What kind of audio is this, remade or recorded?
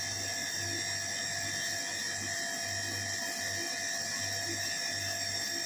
recorded